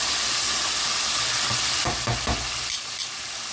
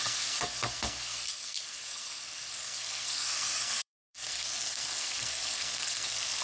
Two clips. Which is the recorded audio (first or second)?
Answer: first